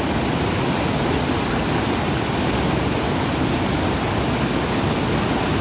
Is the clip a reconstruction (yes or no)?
no